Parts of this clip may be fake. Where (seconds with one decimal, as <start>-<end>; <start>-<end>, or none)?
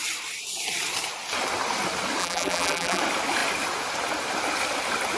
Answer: 2.2-3.0